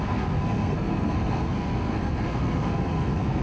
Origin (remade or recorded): remade